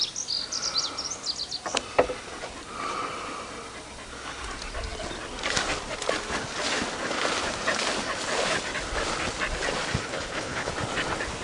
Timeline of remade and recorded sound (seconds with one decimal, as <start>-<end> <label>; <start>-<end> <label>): 0.0-10.1 recorded; 10.1-10.7 remade; 10.7-11.4 recorded